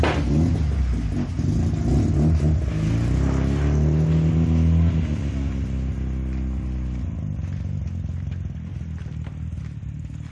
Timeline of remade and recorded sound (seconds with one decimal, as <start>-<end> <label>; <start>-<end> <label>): 0.0-10.3 recorded